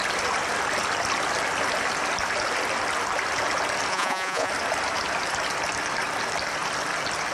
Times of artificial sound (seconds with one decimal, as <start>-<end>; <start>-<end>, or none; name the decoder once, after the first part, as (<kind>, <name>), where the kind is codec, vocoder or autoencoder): 3.9-4.5 (vocoder, Vocos)